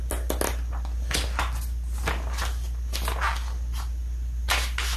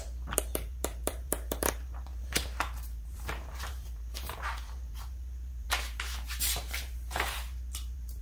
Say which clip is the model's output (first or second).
second